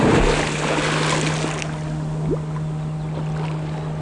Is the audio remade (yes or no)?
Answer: no